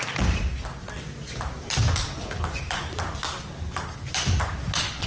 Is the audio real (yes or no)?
yes